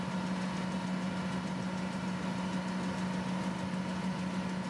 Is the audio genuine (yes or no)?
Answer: yes